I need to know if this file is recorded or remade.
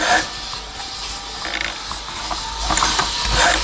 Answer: recorded